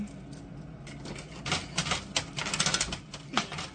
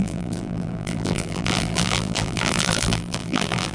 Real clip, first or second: first